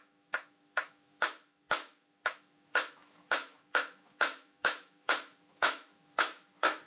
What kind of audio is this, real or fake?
fake